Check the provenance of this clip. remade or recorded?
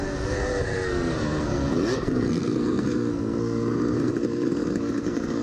remade